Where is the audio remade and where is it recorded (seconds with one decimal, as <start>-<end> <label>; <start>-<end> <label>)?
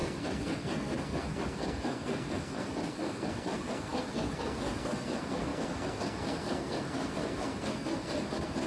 0.0-8.7 remade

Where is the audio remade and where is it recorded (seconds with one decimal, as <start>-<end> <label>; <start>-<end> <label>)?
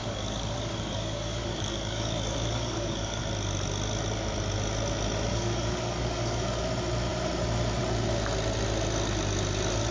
0.0-3.2 remade; 3.2-5.3 recorded; 5.3-6.6 remade; 6.6-9.9 recorded